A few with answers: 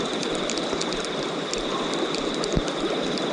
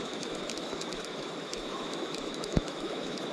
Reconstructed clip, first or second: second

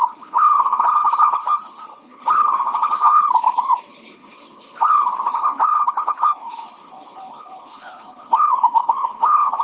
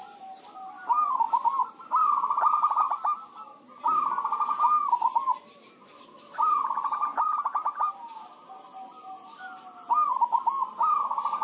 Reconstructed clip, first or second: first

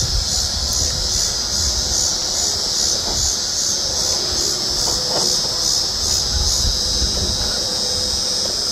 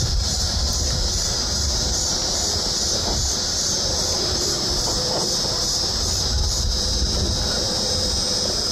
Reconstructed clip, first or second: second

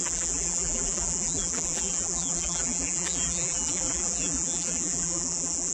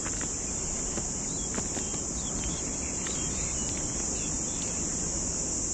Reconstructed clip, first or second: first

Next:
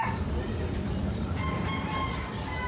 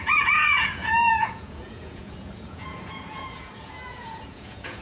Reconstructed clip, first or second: second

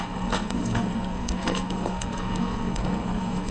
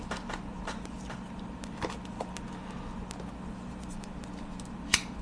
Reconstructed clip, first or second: first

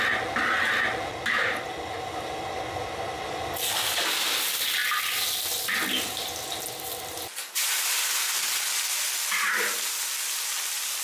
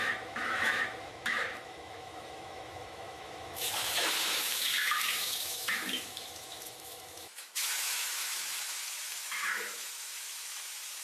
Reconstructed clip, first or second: second